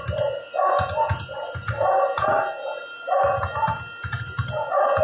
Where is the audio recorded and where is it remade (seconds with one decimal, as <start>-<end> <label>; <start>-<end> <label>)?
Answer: 0.0-5.0 recorded